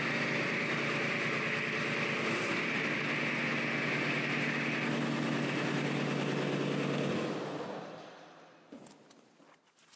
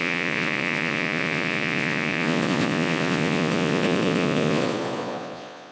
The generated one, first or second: second